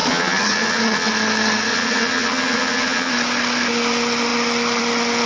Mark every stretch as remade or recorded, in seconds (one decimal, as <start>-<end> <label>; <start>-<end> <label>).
0.0-1.1 remade; 1.1-1.7 recorded; 1.7-3.1 remade; 3.1-5.3 recorded